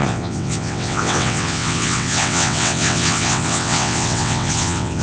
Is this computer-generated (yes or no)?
yes